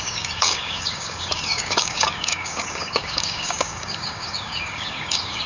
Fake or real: fake